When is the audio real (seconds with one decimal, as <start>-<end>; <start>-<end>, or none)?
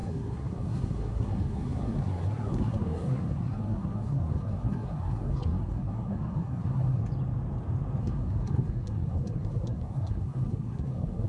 7.0-8.0